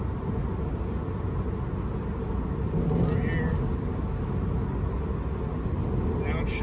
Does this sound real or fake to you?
real